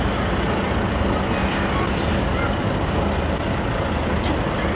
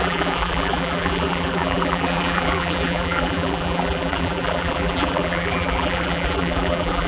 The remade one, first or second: second